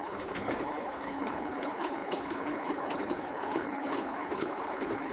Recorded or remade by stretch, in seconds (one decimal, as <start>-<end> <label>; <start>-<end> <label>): 0.0-5.1 remade